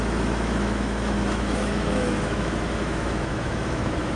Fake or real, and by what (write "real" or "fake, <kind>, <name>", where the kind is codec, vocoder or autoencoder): fake, autoencoder, DAC-VAE